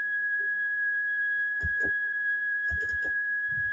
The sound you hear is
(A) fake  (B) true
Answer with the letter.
A